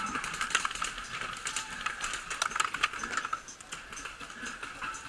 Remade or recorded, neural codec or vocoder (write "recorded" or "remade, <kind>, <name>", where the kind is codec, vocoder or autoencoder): recorded